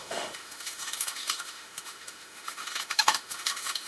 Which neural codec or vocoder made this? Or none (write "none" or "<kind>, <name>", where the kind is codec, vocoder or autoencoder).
autoencoder, DAC-VAE